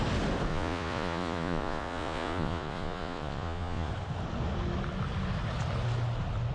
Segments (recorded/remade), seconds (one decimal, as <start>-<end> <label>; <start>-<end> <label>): 0.0-0.5 recorded; 0.5-3.9 remade; 3.9-6.5 recorded